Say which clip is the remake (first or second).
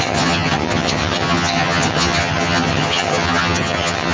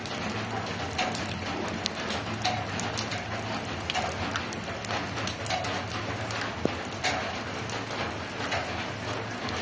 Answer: first